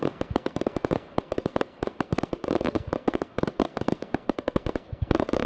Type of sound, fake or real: fake